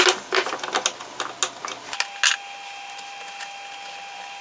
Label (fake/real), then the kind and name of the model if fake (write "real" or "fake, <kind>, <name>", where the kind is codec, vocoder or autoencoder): real